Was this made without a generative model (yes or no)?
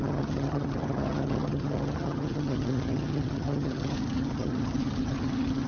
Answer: no